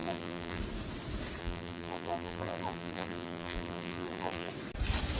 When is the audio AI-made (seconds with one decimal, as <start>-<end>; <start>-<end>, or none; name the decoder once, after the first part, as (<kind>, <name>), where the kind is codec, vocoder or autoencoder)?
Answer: 0.0-0.6 (vocoder, BigVGAN v2); 1.4-4.5

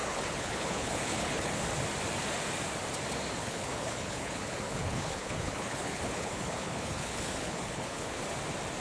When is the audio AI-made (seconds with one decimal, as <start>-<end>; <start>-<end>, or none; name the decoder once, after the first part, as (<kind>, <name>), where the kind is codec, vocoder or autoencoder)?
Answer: 0.0-1.5 (codec, HILCodec); 3.4-8.2

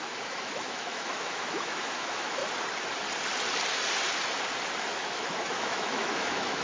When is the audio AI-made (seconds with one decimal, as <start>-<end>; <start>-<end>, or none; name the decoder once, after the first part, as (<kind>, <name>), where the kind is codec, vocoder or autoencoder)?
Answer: 0.0-2.4 (autoencoder, DAC-VAE); 4.8-6.6

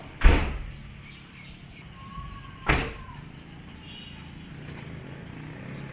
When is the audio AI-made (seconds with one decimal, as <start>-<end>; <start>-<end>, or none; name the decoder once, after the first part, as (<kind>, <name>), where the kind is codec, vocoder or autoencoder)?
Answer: none

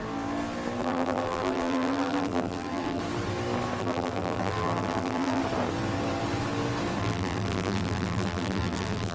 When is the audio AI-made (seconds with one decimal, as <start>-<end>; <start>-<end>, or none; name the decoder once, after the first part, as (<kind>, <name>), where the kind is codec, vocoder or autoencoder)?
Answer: 0.8-3.0 (vocoder, BigVGAN v2); 3.8-5.4; 7.0-9.1

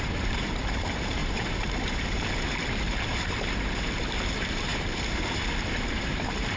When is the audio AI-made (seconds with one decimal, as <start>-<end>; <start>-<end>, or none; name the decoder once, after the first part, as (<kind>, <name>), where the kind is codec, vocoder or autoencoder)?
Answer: 0.0-6.6 (vocoder, BigVGAN v2)

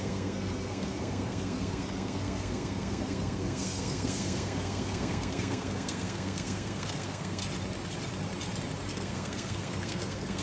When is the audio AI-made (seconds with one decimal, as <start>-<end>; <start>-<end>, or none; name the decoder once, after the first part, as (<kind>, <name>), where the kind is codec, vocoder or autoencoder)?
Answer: 0.0-7.4 (codec, SNAC); 8.9-10.4